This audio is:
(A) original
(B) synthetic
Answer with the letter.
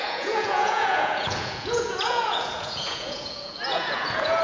B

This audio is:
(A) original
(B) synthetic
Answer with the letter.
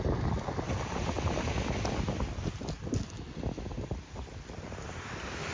A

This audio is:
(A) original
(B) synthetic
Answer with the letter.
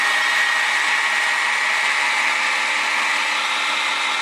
A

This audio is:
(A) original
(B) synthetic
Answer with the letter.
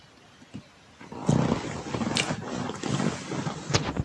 A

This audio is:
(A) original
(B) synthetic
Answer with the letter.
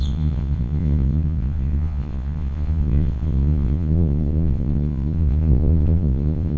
B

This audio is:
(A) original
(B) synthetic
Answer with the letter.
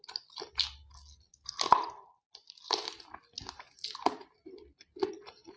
A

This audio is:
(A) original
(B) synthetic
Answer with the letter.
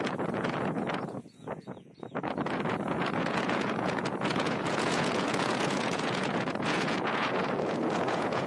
B